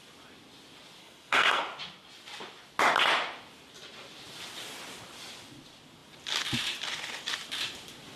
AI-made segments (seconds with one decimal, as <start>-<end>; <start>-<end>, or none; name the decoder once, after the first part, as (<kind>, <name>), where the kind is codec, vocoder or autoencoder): 1.0-1.6 (codec, SNAC)